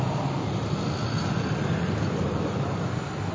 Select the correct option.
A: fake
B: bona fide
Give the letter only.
B